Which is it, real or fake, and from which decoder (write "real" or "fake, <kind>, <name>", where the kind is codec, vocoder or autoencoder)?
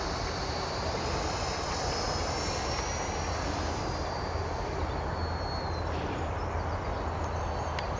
real